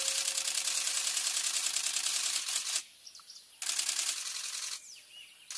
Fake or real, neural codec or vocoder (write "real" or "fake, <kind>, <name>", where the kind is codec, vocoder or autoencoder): real